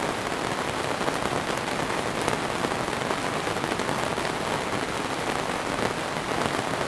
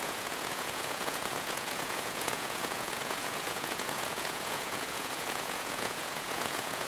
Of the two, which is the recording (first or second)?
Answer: first